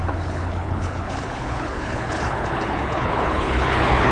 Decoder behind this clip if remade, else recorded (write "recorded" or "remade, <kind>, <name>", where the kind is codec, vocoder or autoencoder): remade, codec, HILCodec